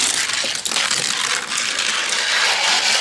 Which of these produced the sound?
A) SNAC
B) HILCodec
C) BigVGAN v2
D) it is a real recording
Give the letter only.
D